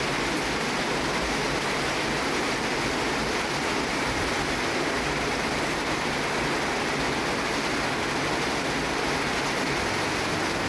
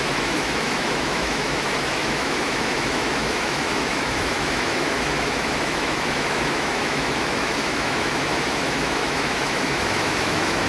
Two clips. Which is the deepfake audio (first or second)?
second